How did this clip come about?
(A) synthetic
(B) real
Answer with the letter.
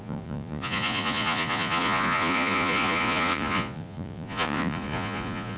A